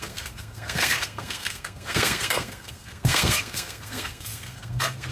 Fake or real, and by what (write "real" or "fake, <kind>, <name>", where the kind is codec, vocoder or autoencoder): fake, codec, SNAC